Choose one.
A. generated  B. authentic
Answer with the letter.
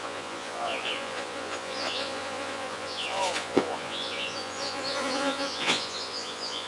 A